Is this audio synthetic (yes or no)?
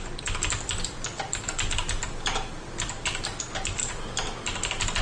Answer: no